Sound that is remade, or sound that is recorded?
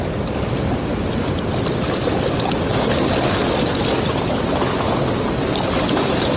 recorded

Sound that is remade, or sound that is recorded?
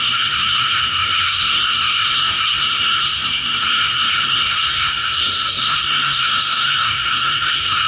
remade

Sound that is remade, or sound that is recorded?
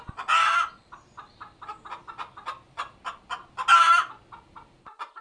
recorded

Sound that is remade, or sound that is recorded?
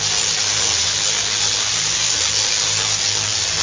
recorded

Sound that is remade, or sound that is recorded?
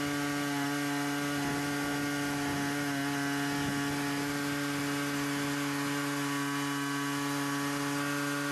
recorded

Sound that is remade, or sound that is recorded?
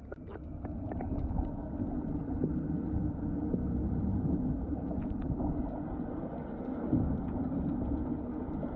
recorded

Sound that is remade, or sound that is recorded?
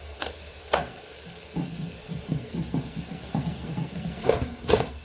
remade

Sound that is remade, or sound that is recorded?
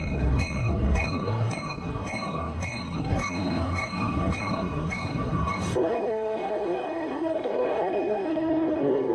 remade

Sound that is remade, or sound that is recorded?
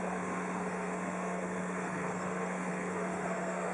remade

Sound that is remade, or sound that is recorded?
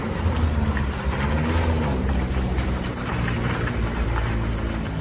recorded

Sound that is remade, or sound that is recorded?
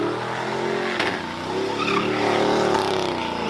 recorded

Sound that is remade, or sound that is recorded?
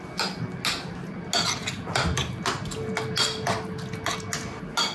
recorded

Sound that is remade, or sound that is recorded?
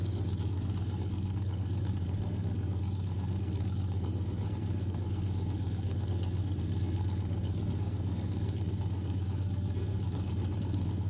remade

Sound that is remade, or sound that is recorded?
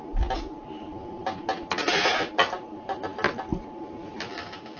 recorded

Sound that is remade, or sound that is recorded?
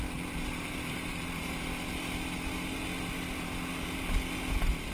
recorded